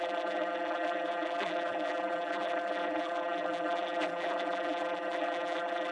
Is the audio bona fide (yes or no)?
no